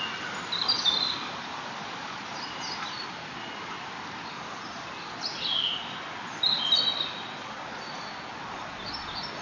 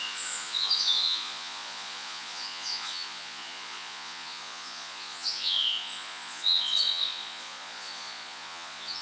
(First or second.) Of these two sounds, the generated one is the second